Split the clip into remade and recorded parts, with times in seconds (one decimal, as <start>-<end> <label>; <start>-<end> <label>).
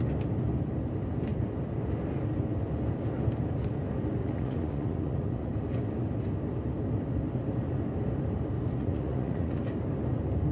0.0-4.2 recorded; 4.2-5.5 remade; 5.5-8.8 recorded; 8.8-9.6 remade; 9.6-10.5 recorded